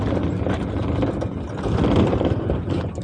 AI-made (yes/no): no